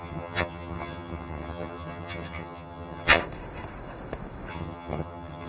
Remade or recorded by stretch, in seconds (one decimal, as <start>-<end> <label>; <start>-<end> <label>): 0.0-3.2 remade; 3.2-4.5 recorded; 4.5-5.5 remade